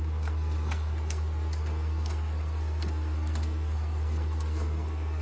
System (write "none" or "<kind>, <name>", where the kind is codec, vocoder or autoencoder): codec, SNAC